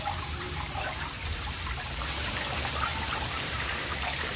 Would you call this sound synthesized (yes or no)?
yes